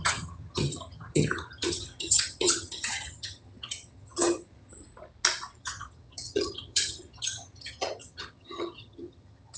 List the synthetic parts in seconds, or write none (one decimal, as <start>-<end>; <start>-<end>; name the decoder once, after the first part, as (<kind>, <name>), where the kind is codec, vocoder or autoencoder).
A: 0.0-4.7 (vocoder, HiFi-GAN); 5.6-9.6